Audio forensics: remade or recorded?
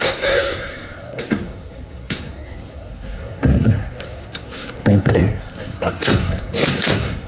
remade